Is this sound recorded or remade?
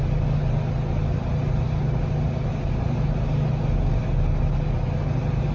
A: recorded